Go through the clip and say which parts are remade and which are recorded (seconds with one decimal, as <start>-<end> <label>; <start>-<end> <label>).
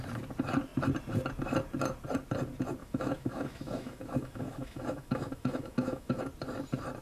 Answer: 0.0-2.8 recorded; 2.8-6.2 remade; 6.2-7.0 recorded